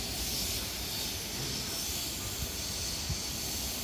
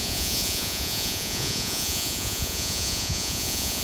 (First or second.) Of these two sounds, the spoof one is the second